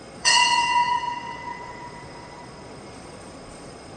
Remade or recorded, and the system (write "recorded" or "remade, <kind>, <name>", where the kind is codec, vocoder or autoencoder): remade, vocoder, Vocos